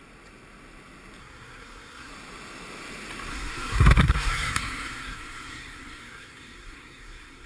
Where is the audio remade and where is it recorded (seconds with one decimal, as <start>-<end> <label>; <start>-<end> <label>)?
0.0-1.2 recorded; 1.2-2.1 remade; 2.1-3.3 recorded; 3.3-7.5 remade